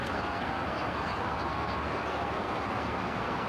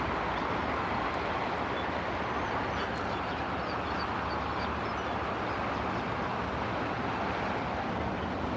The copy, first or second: first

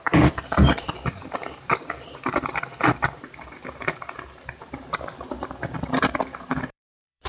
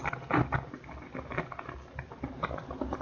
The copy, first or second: first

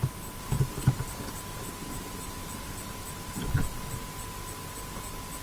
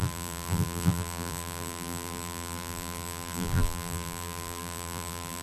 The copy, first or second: second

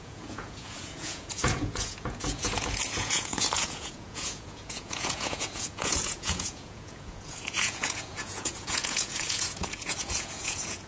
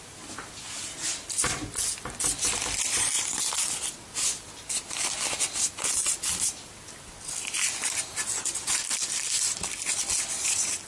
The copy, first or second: first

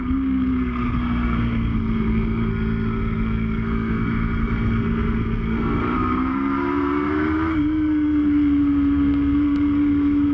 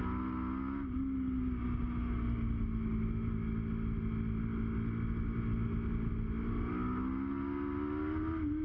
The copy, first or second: first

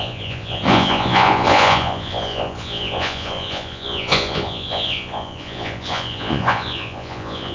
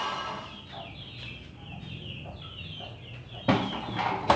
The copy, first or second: first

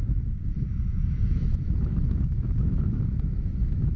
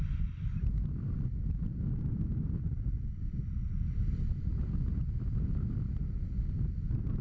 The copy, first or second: first